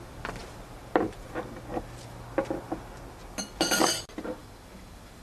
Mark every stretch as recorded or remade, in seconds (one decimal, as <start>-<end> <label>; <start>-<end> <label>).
0.0-5.2 recorded

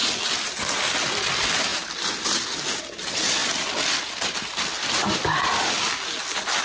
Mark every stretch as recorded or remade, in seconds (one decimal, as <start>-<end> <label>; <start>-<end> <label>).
0.0-6.6 recorded

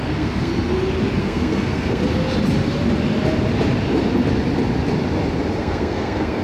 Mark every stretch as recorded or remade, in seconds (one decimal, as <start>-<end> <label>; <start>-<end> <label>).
0.0-0.5 remade; 0.5-1.2 recorded; 1.2-2.0 remade; 2.0-5.6 recorded; 5.6-6.4 remade

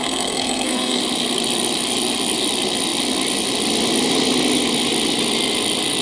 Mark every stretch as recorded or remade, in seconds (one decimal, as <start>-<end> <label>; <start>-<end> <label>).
0.0-1.0 remade; 1.0-6.0 recorded

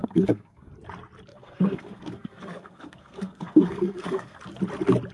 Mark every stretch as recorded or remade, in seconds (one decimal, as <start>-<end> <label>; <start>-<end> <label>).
0.0-0.7 remade; 0.7-1.3 recorded; 1.3-4.4 remade; 4.4-5.1 recorded